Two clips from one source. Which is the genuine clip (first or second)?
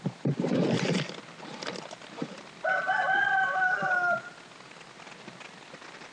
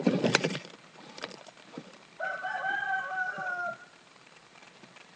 first